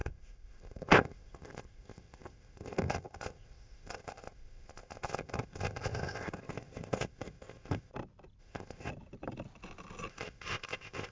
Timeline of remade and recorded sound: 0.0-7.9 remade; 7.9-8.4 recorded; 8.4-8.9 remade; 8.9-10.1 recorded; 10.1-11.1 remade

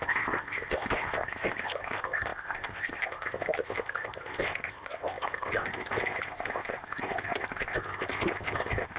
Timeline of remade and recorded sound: 0.0-9.0 remade

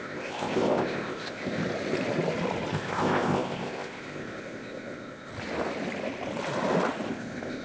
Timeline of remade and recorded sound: 0.0-1.6 remade; 1.6-2.7 recorded; 2.7-5.3 remade; 5.3-7.1 recorded; 7.1-7.6 remade

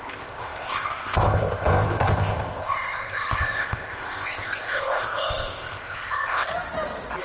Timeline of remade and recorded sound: 0.0-6.5 remade; 6.5-7.2 recorded

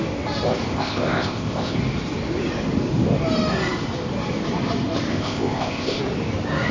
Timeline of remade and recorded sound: 0.0-0.7 recorded; 0.7-1.8 remade; 1.8-5.1 recorded; 5.1-6.0 remade; 6.0-6.7 recorded